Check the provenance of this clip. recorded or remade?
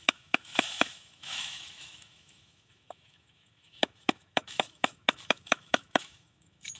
remade